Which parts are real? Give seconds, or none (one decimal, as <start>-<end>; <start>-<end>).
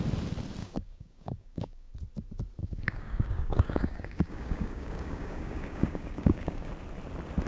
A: 0.0-0.6; 1.9-2.6; 6.7-7.5